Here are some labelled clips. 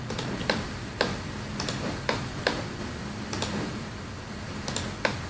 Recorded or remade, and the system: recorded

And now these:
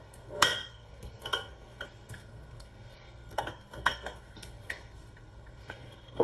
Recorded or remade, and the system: remade, codec, SNAC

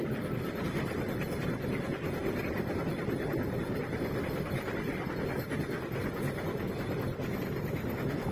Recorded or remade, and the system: recorded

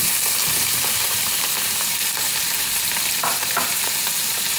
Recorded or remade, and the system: remade, vocoder, BigVGAN v2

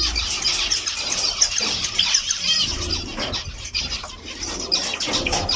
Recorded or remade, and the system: recorded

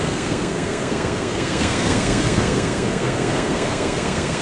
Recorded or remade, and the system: remade, codec, SNAC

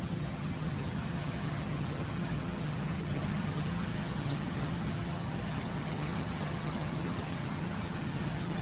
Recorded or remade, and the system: remade, vocoder, HiFi-GAN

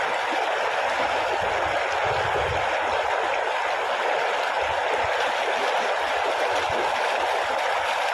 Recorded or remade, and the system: recorded